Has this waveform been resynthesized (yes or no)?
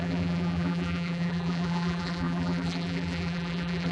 yes